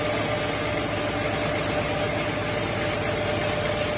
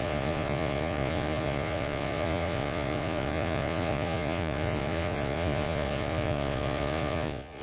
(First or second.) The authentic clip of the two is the first